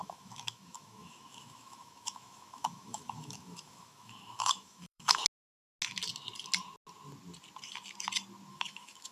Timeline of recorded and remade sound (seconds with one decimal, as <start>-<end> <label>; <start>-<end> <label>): 0.0-5.2 remade; 5.2-8.5 recorded; 8.5-9.1 remade